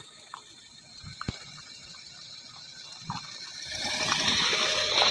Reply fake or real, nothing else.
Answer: real